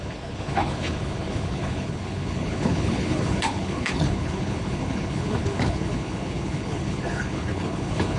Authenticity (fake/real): fake